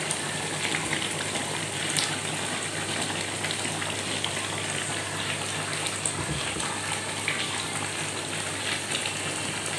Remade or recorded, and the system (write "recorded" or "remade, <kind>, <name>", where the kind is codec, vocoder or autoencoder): recorded